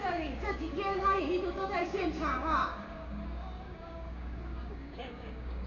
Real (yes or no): no